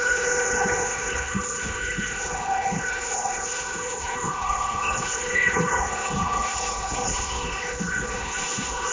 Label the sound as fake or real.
fake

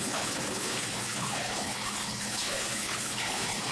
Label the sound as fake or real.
fake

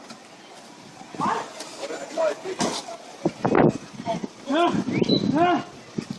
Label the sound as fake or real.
real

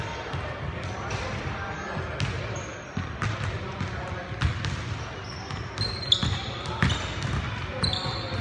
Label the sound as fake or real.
real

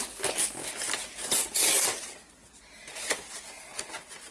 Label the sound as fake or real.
real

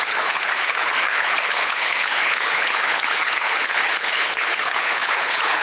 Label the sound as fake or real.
fake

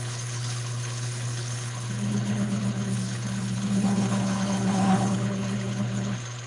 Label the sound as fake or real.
fake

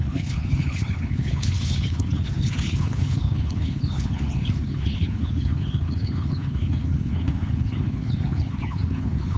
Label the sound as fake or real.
fake